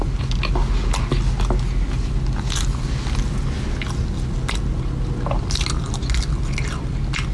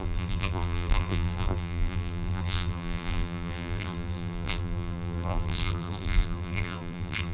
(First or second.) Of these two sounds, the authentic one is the first